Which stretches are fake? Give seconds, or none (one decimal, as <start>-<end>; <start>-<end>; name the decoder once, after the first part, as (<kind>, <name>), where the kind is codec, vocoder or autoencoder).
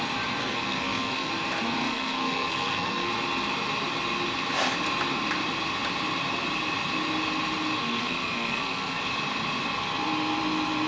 0.4-1.3 (codec, SNAC); 1.8-3.1; 7.8-9.0